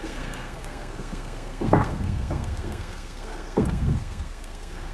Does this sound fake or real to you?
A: fake